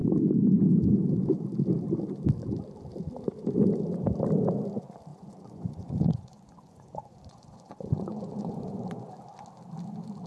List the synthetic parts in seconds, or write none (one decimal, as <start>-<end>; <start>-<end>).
5.1-9.2